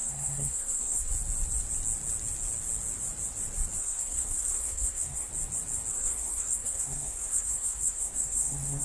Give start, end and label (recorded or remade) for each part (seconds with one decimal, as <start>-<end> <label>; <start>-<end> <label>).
0.0-1.1 remade; 1.1-3.8 recorded; 3.8-5.3 remade; 5.3-5.9 recorded; 5.9-8.8 remade